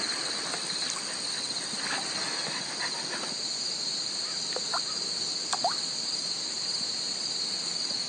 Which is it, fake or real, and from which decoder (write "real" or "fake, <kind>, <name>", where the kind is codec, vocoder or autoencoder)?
real